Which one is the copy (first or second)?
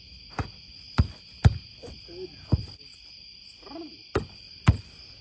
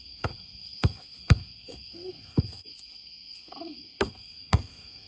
second